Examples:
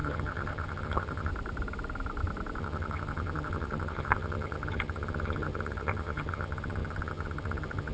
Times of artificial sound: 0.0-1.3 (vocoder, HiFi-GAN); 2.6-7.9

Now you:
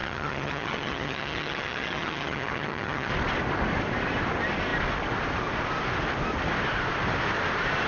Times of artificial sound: 0.0-3.1 (vocoder, HiFi-GAN)

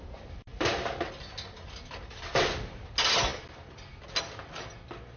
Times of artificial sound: none

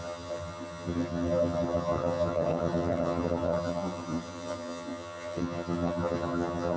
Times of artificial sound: 0.0-6.8 (vocoder, HiFi-GAN)